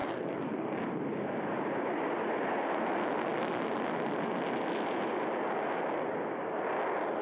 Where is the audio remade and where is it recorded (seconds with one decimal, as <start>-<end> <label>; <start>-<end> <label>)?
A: 0.0-0.8 remade; 0.8-3.3 recorded; 3.3-5.4 remade; 5.4-7.2 recorded